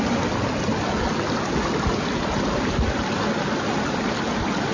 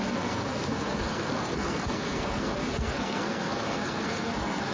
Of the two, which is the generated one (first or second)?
second